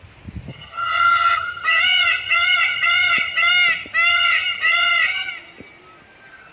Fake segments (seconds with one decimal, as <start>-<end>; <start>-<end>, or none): 0.5-3.5; 4.1-5.3